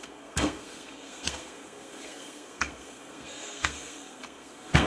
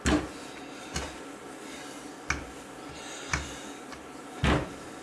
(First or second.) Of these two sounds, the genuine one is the second